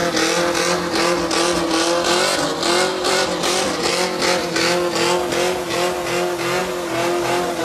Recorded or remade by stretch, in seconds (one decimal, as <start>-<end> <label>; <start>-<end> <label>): 0.0-2.9 recorded; 2.9-3.9 remade; 3.9-7.6 recorded